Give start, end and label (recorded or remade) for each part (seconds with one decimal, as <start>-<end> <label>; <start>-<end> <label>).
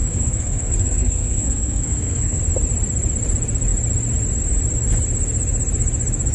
0.0-2.4 remade; 2.4-6.3 recorded